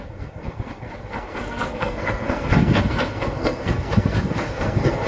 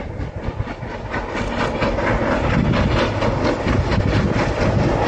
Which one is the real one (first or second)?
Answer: second